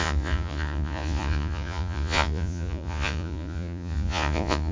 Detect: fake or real fake